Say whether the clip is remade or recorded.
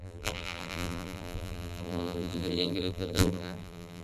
remade